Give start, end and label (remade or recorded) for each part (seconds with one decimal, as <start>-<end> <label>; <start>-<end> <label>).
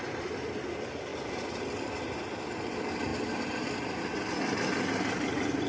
0.0-5.7 recorded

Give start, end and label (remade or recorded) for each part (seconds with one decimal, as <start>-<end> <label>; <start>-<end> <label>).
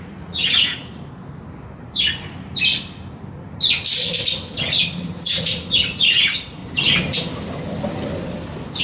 0.0-0.8 remade; 0.8-5.1 recorded; 5.1-6.6 remade; 6.6-8.8 recorded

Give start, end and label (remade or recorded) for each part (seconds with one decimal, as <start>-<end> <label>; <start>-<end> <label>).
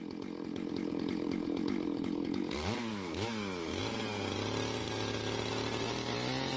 0.0-2.9 recorded; 2.9-3.8 remade; 3.8-6.6 recorded